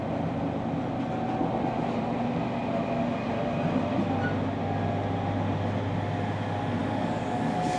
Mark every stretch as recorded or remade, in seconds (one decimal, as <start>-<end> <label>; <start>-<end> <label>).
0.0-6.8 recorded; 6.8-7.8 remade

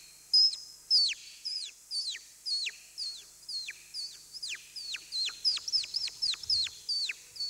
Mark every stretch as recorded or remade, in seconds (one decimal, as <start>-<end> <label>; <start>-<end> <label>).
0.0-1.2 recorded; 1.2-1.8 remade; 1.8-7.5 recorded

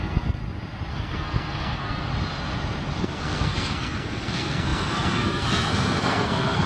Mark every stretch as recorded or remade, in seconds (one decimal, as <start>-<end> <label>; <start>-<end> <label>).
0.0-0.4 remade; 0.4-0.9 recorded; 0.9-2.1 remade; 2.1-3.0 recorded; 3.0-6.7 remade

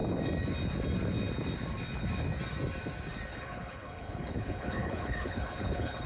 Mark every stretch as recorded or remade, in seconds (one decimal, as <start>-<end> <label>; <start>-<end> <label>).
0.0-3.3 recorded; 3.3-6.1 remade